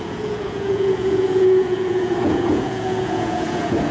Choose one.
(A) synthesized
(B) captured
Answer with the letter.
A